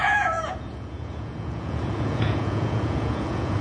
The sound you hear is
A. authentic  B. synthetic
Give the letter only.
B